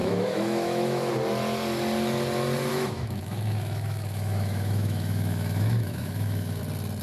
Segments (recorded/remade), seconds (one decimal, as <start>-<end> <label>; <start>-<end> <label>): 0.0-1.1 remade; 1.1-2.7 recorded; 2.7-6.6 remade; 6.6-7.0 recorded